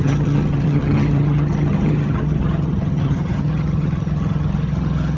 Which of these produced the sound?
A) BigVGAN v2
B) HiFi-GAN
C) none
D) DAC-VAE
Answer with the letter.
B